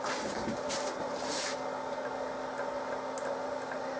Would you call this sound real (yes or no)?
yes